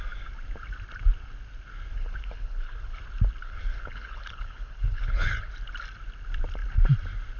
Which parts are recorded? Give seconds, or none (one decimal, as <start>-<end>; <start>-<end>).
0.0-1.9; 3.0-3.4; 5.5-7.4